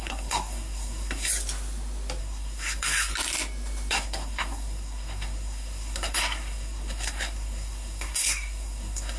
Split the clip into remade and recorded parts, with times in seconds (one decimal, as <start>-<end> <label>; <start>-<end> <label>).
0.0-1.3 remade; 1.3-2.2 recorded; 2.2-3.1 remade; 3.1-3.9 recorded; 3.9-9.2 remade